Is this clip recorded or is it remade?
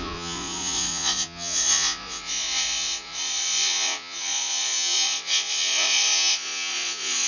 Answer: remade